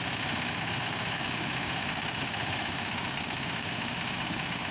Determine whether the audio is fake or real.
fake